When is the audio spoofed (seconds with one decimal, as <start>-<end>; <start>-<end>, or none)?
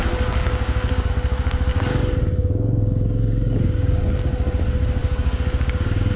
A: 0.4-1.1; 1.7-4.0; 5.0-6.2